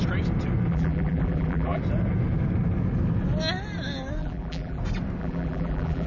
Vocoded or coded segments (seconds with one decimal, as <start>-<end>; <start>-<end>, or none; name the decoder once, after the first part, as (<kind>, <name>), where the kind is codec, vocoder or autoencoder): 0.7-1.8 (vocoder, BigVGAN v2); 4.2-4.8; 5.2-6.1